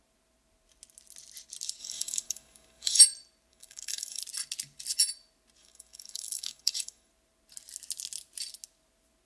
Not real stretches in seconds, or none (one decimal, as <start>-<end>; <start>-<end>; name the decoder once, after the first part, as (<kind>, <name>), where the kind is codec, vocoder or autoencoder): 1.8-3.0 (codec, DAC); 3.5-4.2; 5.6-7.1